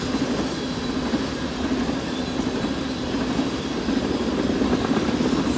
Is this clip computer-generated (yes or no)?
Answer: no